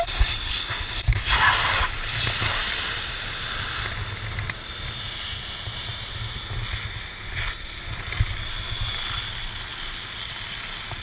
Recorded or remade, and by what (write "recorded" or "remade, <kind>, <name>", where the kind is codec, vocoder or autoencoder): recorded